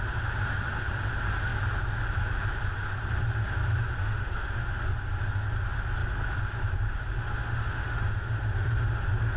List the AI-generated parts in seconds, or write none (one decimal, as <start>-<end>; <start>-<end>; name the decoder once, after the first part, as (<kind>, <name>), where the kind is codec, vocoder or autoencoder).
4.0-4.7 (autoencoder, DAC-VAE); 7.2-9.0